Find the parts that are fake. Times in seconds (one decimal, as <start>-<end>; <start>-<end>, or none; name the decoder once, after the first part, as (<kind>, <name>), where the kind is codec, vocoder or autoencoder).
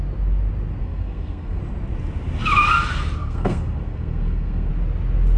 0.8-1.6 (codec, SNAC); 3.2-4.7